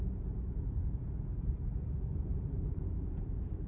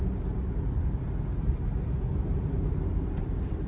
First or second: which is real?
second